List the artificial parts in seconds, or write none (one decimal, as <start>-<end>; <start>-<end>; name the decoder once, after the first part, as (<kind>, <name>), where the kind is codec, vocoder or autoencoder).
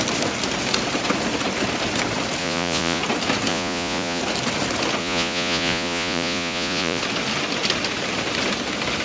2.4-3.0 (vocoder, Vocos); 3.5-4.2; 5.0-7.0